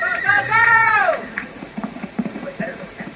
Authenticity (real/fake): fake